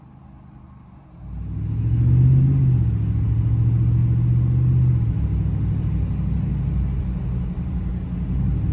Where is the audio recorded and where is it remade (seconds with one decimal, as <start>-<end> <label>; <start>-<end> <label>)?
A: 0.0-8.7 recorded